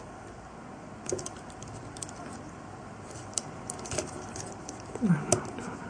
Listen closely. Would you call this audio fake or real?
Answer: real